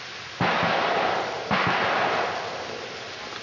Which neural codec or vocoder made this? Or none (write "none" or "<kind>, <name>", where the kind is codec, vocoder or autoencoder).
none